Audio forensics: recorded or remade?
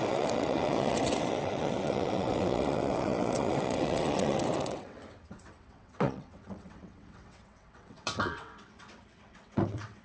remade